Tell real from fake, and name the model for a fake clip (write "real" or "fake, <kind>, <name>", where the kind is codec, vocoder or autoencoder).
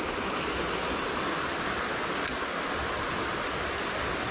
real